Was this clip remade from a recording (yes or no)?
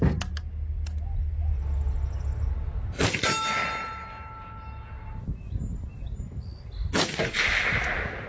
no